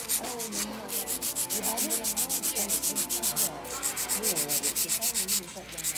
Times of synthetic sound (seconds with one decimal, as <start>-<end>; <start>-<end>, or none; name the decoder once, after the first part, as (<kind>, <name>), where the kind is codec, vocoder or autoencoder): none